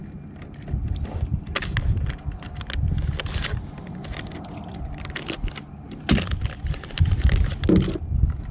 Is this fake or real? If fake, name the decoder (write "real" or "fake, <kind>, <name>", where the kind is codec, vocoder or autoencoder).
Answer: real